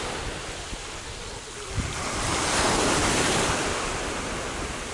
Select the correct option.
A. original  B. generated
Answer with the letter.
A